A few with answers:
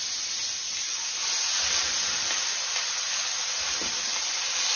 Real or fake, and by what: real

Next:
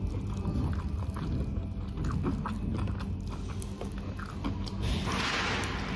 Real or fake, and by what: real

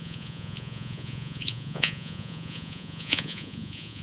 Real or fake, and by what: fake, vocoder, Vocos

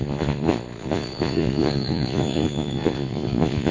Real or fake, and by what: fake, vocoder, Vocos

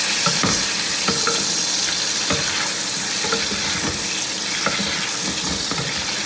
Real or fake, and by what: real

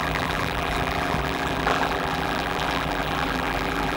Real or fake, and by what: fake, vocoder, BigVGAN v2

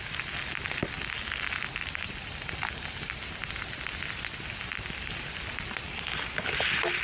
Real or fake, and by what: real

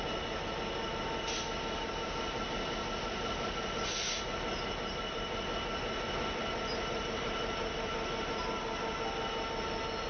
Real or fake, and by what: real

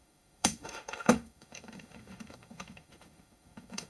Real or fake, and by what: fake, autoencoder, DAC-VAE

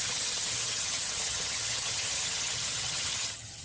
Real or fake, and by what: fake, vocoder, HiFi-GAN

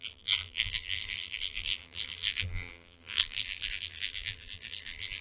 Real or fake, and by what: fake, vocoder, BigVGAN v2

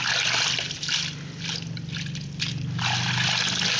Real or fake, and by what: real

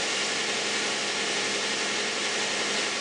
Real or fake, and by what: real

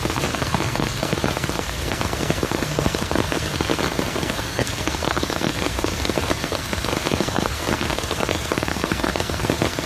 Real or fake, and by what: fake, codec, SNAC